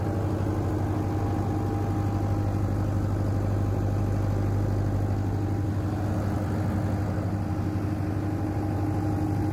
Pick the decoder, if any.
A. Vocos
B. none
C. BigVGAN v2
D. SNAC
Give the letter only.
B